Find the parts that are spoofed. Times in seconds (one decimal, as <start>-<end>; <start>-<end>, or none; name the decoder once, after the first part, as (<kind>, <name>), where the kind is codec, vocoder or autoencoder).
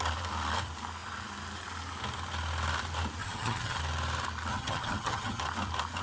3.2-3.8 (vocoder, HiFi-GAN); 4.5-5.4